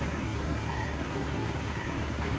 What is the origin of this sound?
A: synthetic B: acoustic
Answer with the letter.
A